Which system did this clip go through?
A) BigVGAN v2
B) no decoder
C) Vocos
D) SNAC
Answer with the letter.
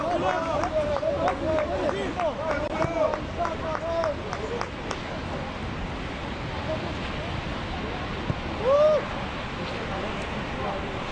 B